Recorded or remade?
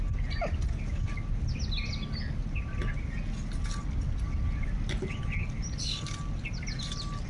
recorded